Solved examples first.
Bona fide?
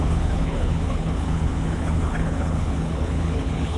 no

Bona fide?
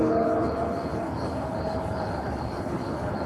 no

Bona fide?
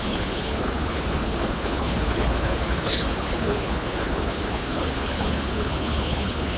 no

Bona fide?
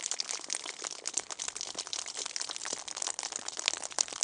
yes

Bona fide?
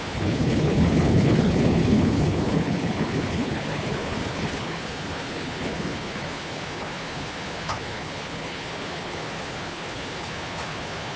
no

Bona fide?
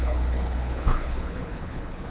no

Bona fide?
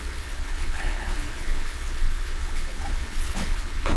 no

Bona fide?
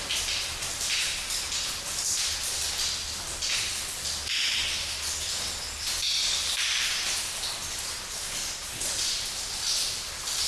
yes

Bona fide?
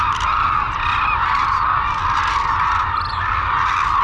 yes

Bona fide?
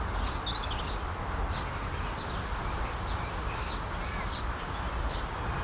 yes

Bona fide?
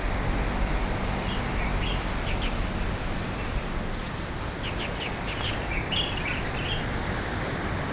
yes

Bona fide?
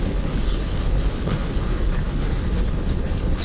no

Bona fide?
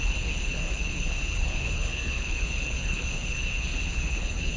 no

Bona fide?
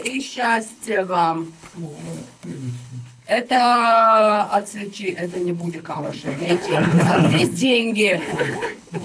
no